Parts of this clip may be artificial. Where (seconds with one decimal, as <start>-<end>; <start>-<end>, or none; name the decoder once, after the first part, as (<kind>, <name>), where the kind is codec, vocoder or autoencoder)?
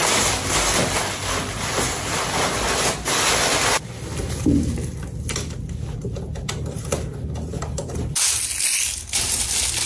7.5-8.0 (vocoder, BigVGAN v2)